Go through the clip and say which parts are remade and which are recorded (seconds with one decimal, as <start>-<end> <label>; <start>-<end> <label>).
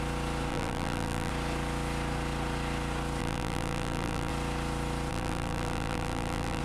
0.0-0.5 recorded; 0.5-1.3 remade; 1.3-3.2 recorded; 3.2-4.3 remade; 4.3-5.1 recorded; 5.1-6.6 remade